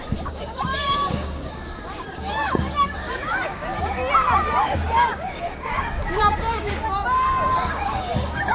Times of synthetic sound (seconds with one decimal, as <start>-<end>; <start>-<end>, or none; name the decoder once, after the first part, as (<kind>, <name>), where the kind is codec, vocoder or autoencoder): 0.0-4.0 (codec, DAC); 4.6-8.5